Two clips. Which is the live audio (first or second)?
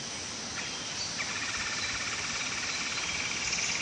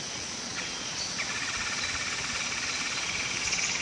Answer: first